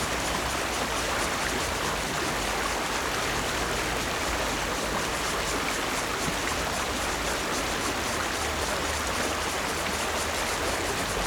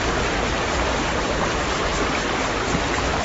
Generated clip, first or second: second